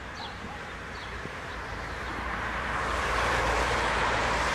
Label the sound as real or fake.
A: fake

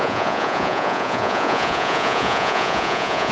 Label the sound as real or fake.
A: fake